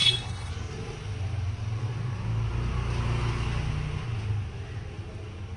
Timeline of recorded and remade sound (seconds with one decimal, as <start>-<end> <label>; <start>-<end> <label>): 0.0-0.5 remade; 0.5-5.6 recorded